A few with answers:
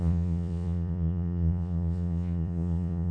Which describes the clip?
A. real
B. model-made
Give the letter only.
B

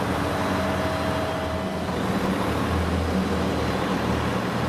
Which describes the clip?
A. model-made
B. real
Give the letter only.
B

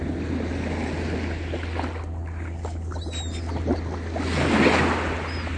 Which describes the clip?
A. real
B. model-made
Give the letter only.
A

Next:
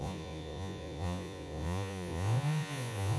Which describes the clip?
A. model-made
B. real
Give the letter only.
A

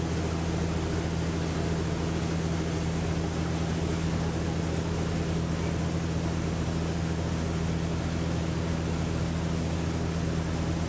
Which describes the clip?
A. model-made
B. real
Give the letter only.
B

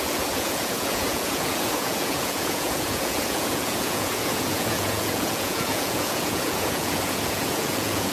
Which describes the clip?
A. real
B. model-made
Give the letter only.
B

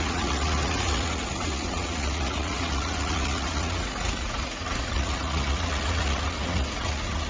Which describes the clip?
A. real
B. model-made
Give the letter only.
B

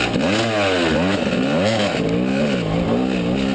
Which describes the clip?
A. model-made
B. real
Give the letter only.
B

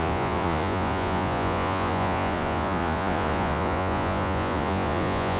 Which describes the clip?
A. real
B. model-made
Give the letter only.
B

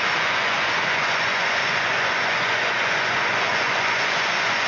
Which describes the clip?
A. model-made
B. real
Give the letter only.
A